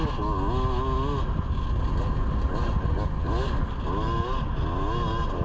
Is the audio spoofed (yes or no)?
no